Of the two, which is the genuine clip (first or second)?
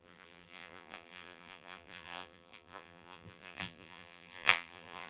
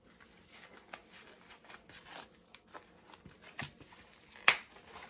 second